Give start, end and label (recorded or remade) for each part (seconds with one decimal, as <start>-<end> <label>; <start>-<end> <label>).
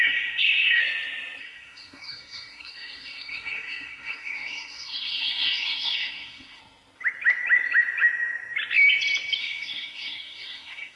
0.0-0.8 remade; 0.8-1.4 recorded; 1.4-6.6 remade; 6.6-9.4 recorded; 9.4-11.0 remade